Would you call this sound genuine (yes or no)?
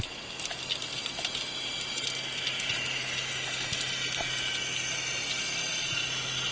yes